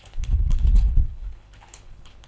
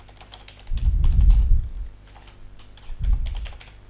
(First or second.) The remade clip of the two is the first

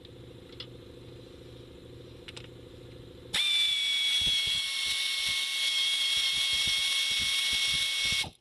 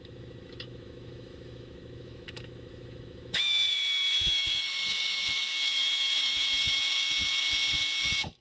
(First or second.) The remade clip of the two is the second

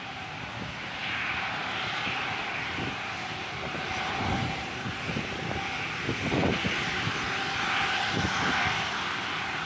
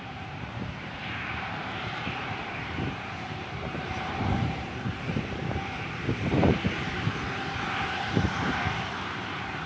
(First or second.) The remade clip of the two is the second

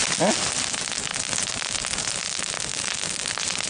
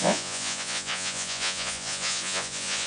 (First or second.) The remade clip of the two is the second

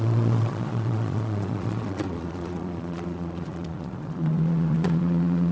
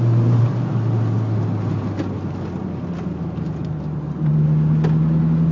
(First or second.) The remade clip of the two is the first